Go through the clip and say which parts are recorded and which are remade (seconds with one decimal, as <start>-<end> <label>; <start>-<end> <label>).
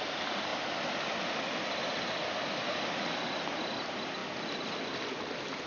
0.0-5.7 recorded